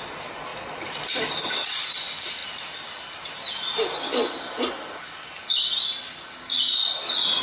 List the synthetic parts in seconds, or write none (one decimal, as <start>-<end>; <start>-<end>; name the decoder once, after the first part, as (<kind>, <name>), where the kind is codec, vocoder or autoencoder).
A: none